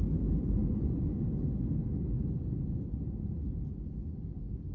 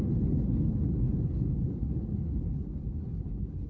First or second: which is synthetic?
second